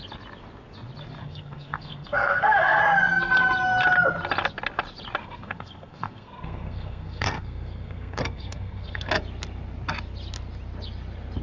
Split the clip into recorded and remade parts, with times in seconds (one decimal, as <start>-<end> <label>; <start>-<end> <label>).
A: 0.0-1.2 recorded; 1.2-2.8 remade; 2.8-5.2 recorded; 5.2-9.1 remade; 9.1-11.4 recorded